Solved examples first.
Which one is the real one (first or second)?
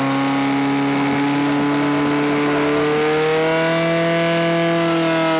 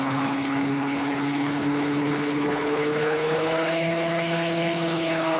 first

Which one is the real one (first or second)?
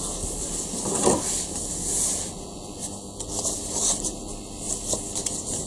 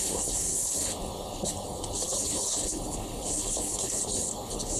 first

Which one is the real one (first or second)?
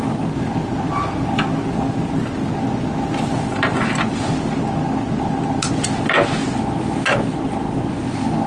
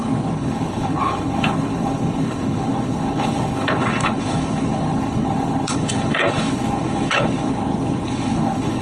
first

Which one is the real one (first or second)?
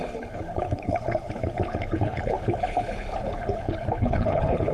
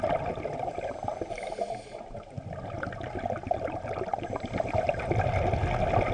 second